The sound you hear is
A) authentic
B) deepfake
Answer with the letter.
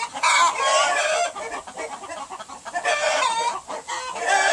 A